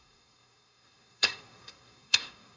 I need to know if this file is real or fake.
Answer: fake